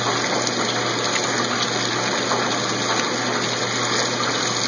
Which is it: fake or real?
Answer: real